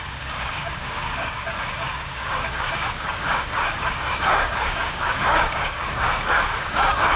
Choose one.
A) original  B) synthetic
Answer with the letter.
B